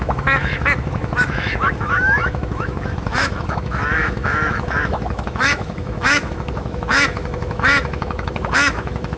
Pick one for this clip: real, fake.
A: fake